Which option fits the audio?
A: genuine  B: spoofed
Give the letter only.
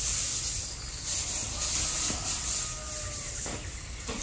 A